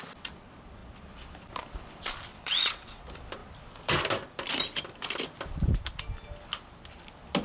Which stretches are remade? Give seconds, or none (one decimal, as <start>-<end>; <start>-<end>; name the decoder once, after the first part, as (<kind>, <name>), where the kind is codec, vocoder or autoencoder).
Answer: 2.3-3.0 (vocoder, WaveNeXt)